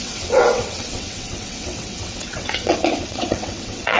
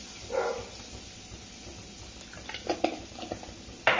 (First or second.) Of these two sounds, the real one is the second